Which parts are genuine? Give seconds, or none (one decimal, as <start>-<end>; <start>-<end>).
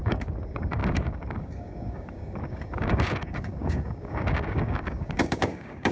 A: none